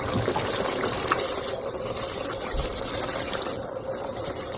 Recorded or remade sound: remade